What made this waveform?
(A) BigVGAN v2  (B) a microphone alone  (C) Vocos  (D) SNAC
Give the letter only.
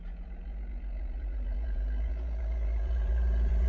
C